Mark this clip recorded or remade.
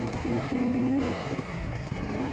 remade